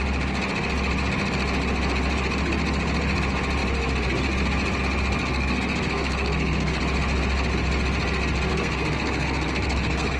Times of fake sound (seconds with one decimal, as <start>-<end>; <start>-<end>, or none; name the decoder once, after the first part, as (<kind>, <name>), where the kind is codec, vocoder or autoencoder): 5.3-6.8 (codec, SNAC); 8.5-10.2